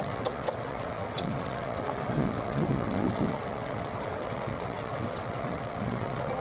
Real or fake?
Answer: fake